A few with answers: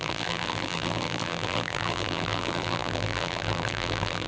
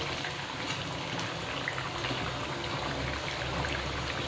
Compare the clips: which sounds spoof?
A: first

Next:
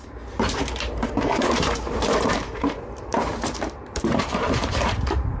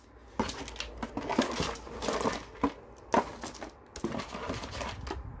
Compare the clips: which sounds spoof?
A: first